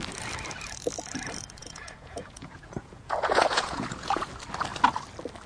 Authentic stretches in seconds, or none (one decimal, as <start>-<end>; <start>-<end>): 0.0-1.6; 4.3-5.5